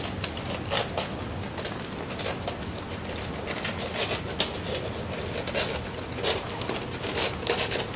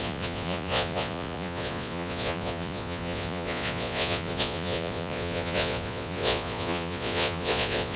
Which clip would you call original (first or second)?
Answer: first